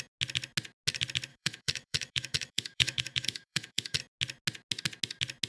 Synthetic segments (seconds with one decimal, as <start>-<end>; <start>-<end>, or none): 1.3-4.0